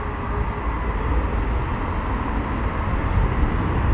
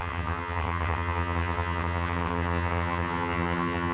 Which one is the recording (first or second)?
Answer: first